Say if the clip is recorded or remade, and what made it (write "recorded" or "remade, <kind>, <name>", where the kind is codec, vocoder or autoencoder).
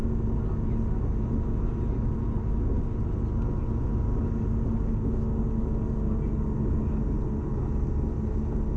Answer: recorded